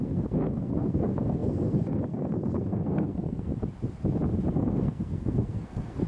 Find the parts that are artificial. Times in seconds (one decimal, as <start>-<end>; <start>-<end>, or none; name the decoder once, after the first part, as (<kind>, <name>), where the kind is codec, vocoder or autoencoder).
0.0-3.5 (codec, SNAC); 4.5-6.1